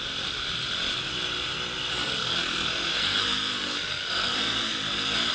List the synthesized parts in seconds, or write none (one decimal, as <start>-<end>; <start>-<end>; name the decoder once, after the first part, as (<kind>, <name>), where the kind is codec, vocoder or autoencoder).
1.9-5.3 (codec, SNAC)